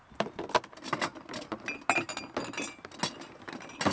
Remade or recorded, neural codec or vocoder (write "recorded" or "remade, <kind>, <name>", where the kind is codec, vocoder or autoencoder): recorded